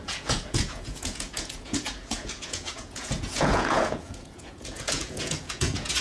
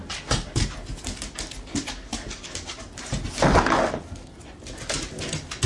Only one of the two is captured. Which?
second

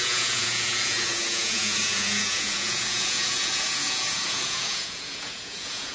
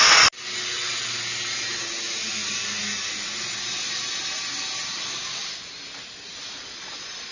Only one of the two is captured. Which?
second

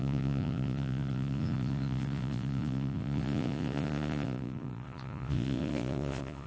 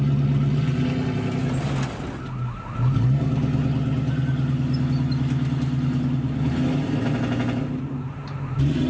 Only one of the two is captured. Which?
second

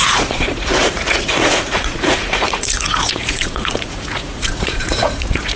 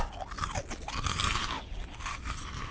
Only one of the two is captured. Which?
second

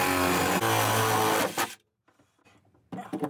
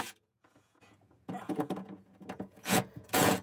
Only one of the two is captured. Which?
first